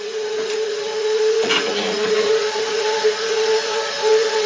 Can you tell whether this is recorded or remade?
remade